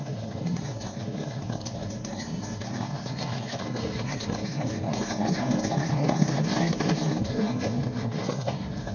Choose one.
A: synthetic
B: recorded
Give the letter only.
A